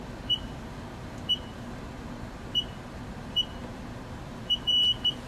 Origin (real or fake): fake